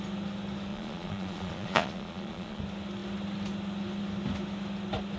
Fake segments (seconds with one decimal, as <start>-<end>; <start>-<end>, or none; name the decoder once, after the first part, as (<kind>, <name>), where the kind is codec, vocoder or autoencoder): 0.7-2.6 (vocoder, Vocos)